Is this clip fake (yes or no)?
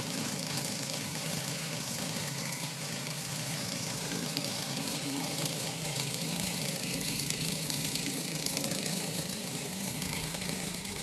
yes